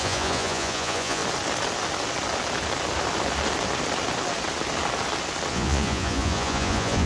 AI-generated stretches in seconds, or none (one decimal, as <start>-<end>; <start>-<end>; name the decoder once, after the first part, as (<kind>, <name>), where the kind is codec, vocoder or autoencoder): 0.0-1.2 (vocoder, Vocos); 5.5-7.1